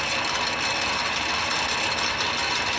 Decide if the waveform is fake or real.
fake